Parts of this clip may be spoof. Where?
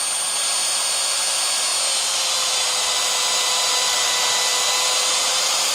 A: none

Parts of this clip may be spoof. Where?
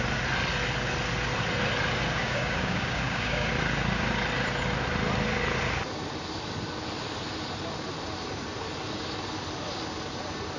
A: 2.2-3.5 (codec, DAC)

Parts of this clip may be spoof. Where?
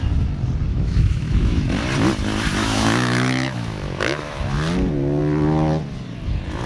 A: 0.7-1.6 (autoencoder, DAC-VAE); 2.6-4.4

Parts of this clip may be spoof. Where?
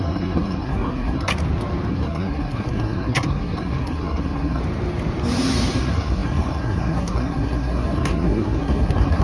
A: 0.0-1.3 (codec, SNAC); 1.9-4.6; 5.8-9.2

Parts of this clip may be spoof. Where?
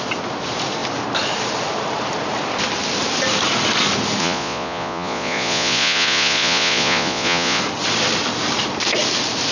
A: 4.2-7.6 (vocoder, Vocos)